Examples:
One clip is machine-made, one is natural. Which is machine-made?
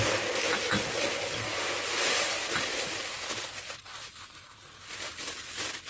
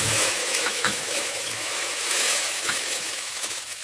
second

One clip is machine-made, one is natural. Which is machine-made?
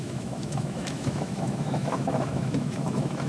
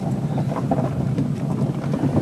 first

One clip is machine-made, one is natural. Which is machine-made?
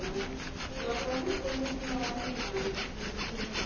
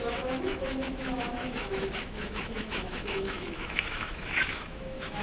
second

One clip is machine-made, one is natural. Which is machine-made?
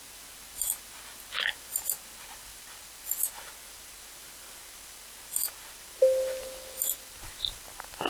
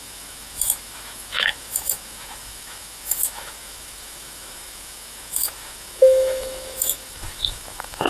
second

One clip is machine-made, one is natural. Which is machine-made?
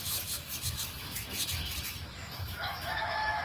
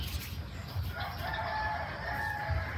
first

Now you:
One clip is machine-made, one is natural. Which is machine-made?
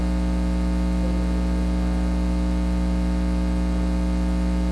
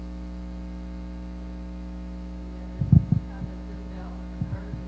second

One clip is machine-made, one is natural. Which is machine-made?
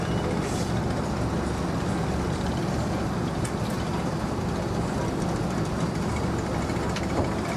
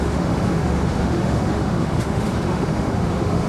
second